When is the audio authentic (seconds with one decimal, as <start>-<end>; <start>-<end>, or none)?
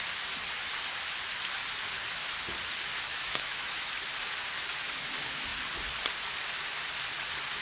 0.0-3.1; 3.9-7.6